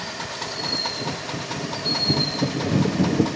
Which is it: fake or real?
real